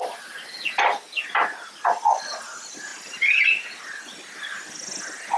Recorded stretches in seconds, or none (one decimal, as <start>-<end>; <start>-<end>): 0.0-5.4